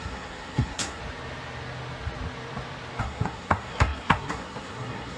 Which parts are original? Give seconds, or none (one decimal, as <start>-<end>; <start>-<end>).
1.0-3.0